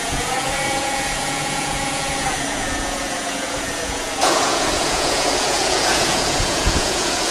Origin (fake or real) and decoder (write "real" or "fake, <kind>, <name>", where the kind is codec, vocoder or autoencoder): fake, vocoder, Vocos